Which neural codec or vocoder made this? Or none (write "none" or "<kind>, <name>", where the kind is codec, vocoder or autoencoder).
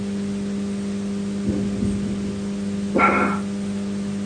none